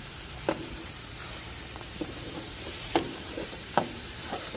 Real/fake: fake